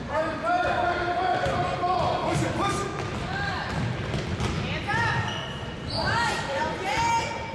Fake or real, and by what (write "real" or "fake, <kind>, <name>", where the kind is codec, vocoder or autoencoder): real